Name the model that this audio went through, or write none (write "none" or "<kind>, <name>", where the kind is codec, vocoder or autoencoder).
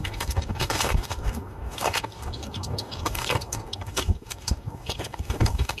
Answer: codec, DAC